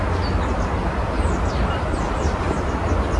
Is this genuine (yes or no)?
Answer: yes